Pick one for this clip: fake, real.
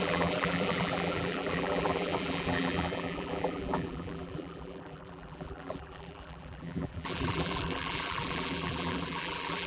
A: fake